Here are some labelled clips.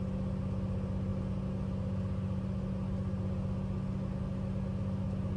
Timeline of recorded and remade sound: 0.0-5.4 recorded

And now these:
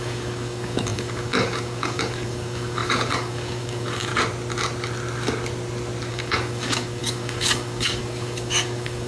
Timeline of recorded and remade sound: 0.0-4.1 remade; 4.1-6.1 recorded; 6.1-9.1 remade

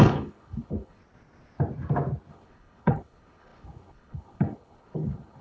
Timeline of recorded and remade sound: 0.0-1.0 remade; 1.0-2.3 recorded; 2.3-5.4 remade

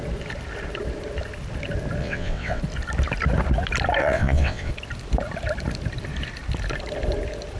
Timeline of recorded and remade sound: 0.0-2.0 recorded; 2.0-2.6 remade; 2.6-4.0 recorded; 4.0-4.7 remade; 4.7-7.6 recorded

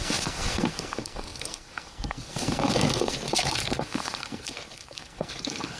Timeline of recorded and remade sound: 0.0-5.8 remade

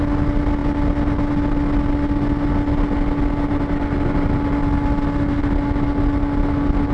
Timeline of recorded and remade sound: 0.0-6.9 recorded

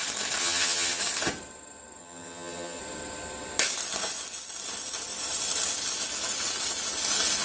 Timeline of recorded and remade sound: 0.0-0.4 recorded; 0.4-1.0 remade; 1.0-2.0 recorded; 2.0-2.8 remade; 2.8-7.4 recorded